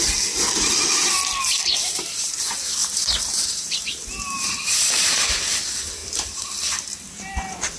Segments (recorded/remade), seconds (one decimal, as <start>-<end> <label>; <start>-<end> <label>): 0.0-1.6 recorded; 1.6-2.4 remade; 2.4-2.8 recorded; 2.8-4.5 remade; 4.5-6.0 recorded; 6.0-6.5 remade; 6.5-7.8 recorded